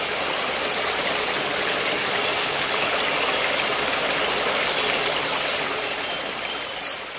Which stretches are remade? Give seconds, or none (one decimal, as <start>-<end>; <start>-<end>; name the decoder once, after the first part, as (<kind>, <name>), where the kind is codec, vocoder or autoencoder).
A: 2.4-3.0 (codec, HILCodec)